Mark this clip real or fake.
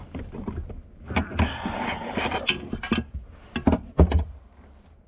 real